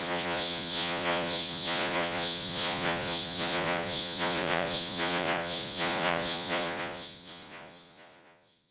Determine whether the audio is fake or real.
fake